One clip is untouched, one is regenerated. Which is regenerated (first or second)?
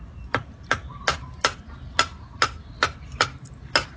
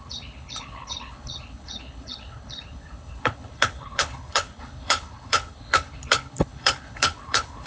second